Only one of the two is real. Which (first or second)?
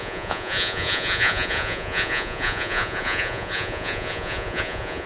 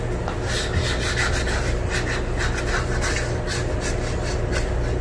second